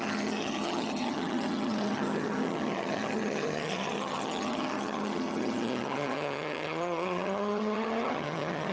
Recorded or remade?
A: remade